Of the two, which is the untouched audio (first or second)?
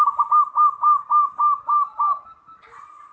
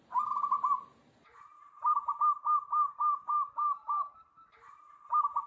first